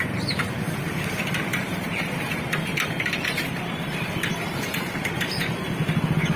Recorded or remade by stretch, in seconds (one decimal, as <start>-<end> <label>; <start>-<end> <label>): 0.0-1.5 recorded; 1.5-5.3 remade; 5.3-6.4 recorded